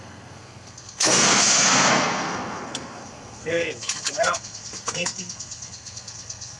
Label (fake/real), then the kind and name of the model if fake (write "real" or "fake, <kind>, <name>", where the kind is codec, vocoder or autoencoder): fake, codec, SNAC